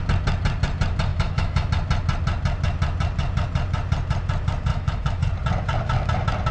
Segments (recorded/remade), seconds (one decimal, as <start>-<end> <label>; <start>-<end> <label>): 0.0-1.1 recorded; 1.1-1.7 remade; 1.7-4.7 recorded; 4.7-5.2 remade; 5.2-6.5 recorded